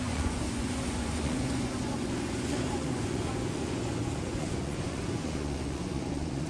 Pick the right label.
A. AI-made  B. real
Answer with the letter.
A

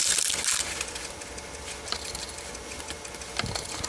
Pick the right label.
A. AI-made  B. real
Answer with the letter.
B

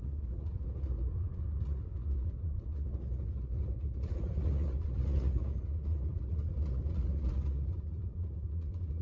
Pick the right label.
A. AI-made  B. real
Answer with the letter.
A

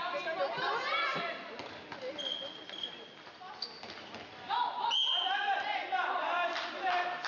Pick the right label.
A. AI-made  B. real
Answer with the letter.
B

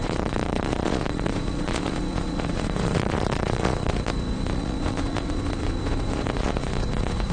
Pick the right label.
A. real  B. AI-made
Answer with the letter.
B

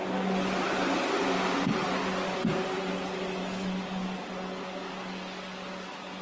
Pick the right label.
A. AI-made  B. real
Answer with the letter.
B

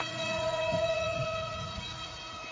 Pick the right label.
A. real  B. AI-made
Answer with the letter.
B